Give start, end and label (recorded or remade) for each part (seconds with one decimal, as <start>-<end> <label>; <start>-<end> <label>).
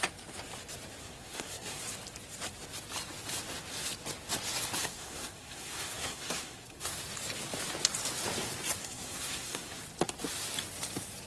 0.0-1.0 recorded; 1.0-1.8 remade; 1.8-4.8 recorded; 4.8-7.0 remade; 7.0-8.8 recorded; 8.8-9.8 remade; 9.8-11.3 recorded